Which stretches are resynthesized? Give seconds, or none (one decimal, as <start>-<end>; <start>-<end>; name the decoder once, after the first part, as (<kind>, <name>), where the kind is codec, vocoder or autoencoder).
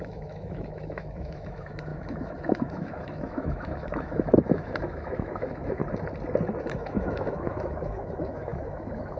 0.0-5.8 (autoencoder, DAC-VAE); 6.6-9.2